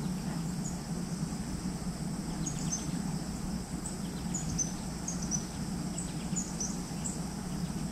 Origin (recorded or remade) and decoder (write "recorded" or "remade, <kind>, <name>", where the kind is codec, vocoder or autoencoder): recorded